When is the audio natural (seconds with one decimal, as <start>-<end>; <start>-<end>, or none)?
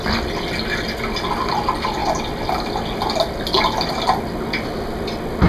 0.0-5.5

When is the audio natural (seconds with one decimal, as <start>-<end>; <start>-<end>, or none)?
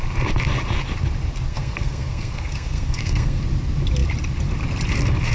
0.0-1.5; 3.4-5.3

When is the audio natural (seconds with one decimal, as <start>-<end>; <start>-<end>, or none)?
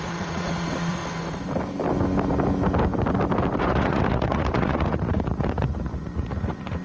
1.0-3.6